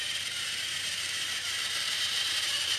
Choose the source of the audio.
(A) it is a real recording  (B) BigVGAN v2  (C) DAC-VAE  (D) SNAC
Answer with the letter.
B